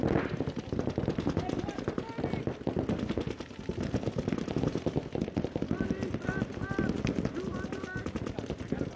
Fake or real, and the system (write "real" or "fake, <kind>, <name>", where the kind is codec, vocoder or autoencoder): real